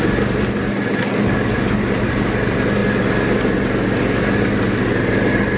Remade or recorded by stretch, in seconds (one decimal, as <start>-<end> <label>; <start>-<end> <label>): 0.0-5.6 recorded